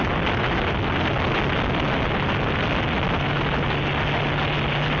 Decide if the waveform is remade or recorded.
recorded